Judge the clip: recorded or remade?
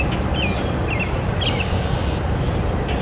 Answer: recorded